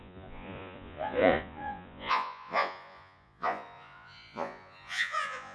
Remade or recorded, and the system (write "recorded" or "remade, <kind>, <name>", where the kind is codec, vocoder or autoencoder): remade, vocoder, Vocos